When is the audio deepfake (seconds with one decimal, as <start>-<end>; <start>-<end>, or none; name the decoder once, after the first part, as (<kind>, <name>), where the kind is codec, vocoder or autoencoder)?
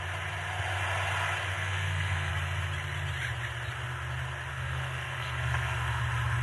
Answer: 1.5-2.3 (codec, SNAC); 4.5-6.0